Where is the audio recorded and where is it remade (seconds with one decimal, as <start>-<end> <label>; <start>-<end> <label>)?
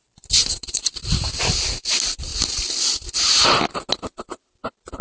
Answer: 0.0-0.4 recorded; 0.4-1.4 remade; 1.4-5.0 recorded